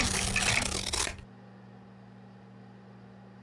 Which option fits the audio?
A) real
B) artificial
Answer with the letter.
A